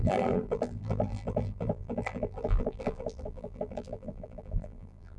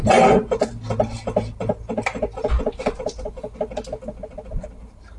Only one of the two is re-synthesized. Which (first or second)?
first